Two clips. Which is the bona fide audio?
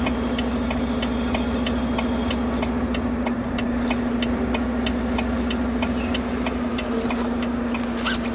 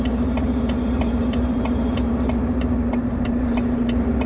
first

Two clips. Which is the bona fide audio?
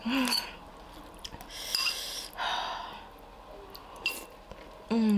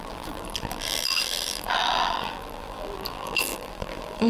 first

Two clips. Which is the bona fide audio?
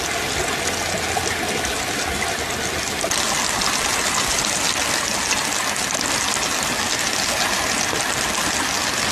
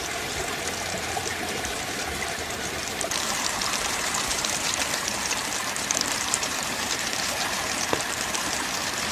first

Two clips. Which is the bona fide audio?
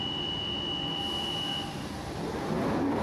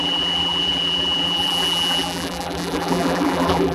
first